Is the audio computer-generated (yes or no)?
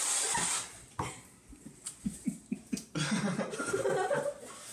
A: no